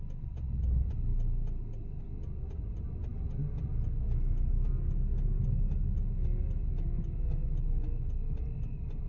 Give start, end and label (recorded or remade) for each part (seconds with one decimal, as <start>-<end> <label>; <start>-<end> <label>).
0.0-9.1 recorded